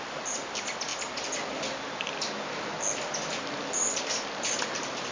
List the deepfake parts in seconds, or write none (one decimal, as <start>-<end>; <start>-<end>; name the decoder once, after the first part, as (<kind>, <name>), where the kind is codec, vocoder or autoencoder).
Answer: none